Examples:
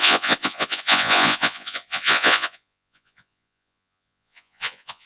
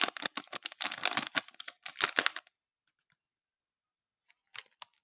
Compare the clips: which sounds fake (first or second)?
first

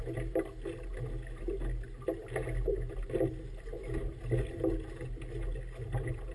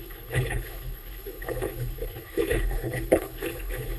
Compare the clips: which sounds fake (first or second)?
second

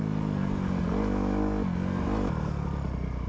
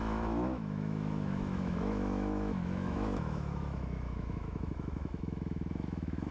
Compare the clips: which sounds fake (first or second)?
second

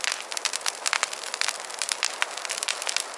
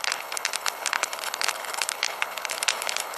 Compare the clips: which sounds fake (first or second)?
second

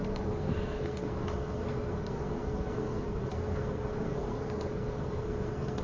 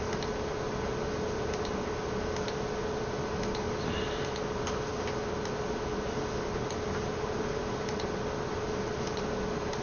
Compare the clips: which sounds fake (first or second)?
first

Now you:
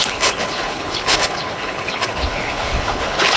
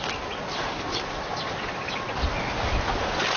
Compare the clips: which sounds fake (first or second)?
first